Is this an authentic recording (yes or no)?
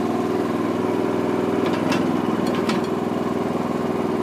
yes